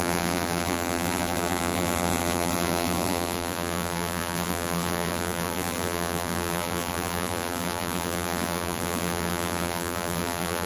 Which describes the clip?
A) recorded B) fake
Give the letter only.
B